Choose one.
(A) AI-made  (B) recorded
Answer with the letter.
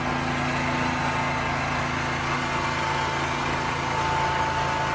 B